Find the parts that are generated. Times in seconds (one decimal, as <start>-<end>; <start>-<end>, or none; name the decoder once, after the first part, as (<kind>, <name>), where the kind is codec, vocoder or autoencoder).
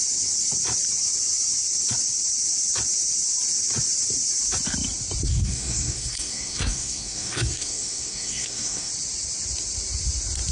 5.3-8.9 (codec, SNAC)